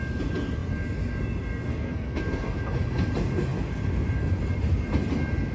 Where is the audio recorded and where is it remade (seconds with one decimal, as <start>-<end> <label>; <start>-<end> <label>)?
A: 0.0-1.7 recorded; 1.7-2.6 remade; 2.6-5.5 recorded